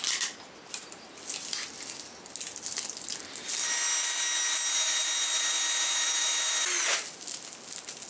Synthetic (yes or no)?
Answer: no